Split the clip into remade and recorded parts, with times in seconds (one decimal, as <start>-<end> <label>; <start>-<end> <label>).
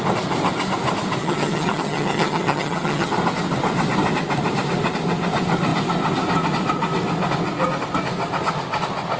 0.0-1.2 recorded; 1.2-3.1 remade; 3.1-9.2 recorded